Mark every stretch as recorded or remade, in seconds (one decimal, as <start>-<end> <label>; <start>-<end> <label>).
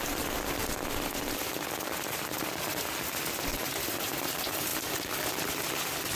0.0-6.2 recorded